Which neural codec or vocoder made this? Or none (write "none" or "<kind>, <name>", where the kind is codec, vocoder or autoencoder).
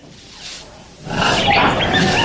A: none